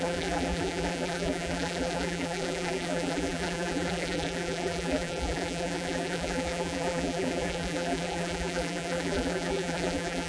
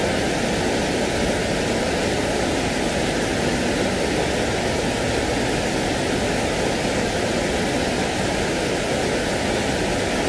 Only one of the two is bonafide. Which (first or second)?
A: second